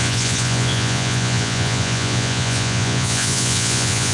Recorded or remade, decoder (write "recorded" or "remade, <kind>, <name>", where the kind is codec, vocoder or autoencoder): remade, vocoder, Vocos